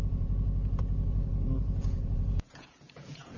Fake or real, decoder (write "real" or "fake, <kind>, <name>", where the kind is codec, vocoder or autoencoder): fake, vocoder, Vocos